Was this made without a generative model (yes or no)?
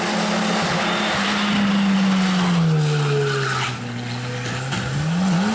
yes